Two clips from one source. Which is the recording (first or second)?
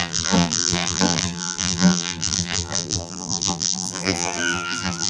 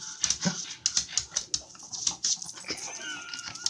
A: second